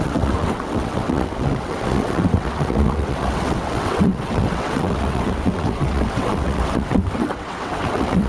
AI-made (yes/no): yes